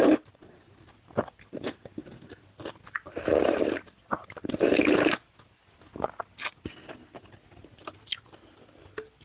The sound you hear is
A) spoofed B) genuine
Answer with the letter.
B